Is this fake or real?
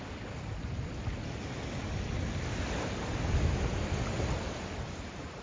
real